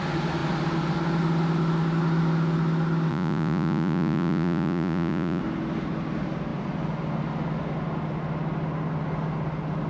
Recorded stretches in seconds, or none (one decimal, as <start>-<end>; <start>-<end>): 0.0-3.1; 5.4-9.9